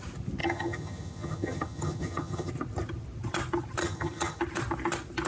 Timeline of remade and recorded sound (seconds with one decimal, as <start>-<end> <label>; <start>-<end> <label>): 0.0-0.4 recorded; 0.4-2.5 remade; 2.5-3.8 recorded; 3.8-4.4 remade; 4.4-5.3 recorded